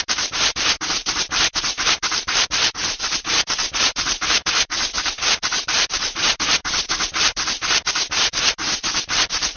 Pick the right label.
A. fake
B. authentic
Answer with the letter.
A